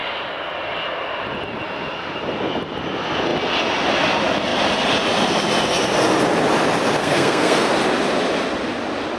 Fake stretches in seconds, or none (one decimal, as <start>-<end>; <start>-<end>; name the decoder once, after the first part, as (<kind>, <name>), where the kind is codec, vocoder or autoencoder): 7.0-7.7 (codec, SNAC)